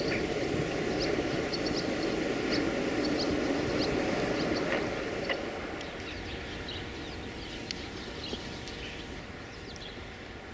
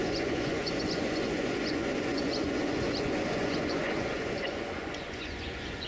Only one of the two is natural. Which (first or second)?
first